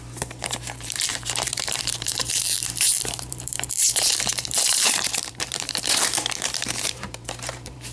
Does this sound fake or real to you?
fake